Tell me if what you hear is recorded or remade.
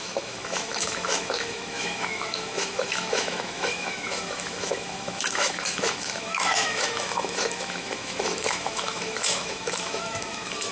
remade